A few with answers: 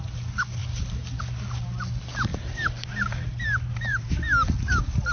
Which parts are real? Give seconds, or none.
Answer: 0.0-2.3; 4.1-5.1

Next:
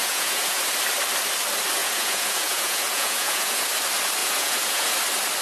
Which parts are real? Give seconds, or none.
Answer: 0.6-1.8; 3.7-4.2; 4.9-5.4

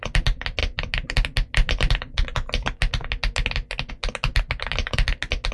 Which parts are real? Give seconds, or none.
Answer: 0.0-5.5

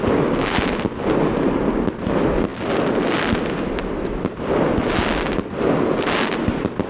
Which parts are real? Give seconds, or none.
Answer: 0.0-6.9

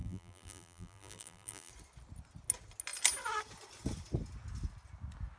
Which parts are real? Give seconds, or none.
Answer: 1.7-5.4

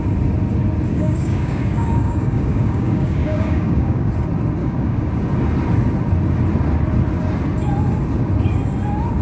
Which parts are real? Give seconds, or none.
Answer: 0.0-0.9; 4.1-4.6; 5.1-9.2

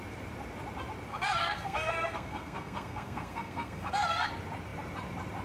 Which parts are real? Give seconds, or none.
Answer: 0.0-1.1; 4.3-5.4